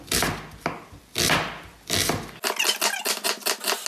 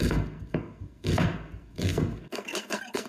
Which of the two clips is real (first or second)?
first